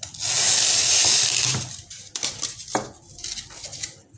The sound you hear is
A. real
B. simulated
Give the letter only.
A